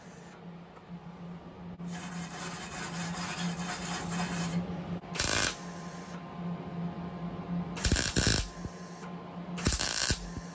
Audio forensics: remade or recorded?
recorded